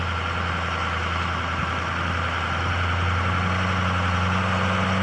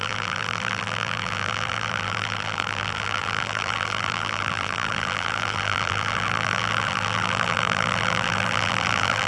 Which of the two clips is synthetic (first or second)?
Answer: second